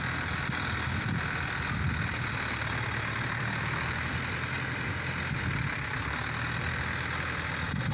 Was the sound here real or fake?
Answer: real